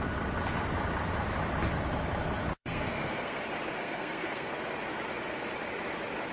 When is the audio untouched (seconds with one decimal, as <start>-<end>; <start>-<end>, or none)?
0.0-2.6; 3.4-3.8; 4.5-6.3